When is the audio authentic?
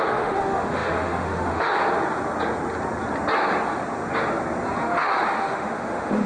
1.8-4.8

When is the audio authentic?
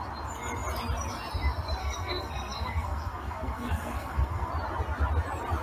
0.0-1.8; 4.5-5.6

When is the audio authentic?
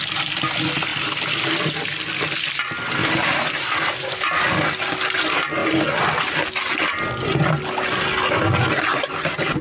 0.0-3.0; 3.6-9.6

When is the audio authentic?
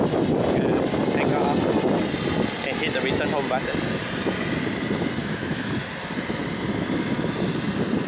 0.0-5.2; 5.7-8.1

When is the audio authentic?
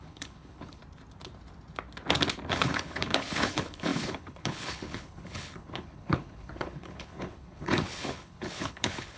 0.8-2.5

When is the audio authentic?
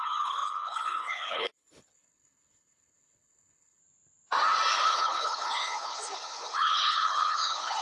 3.8-4.7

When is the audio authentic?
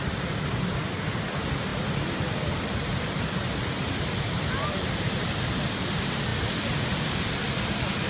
0.0-8.1